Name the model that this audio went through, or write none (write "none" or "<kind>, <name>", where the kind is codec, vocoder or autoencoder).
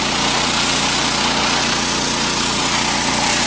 none